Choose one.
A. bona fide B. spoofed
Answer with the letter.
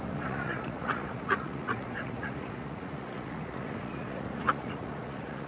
B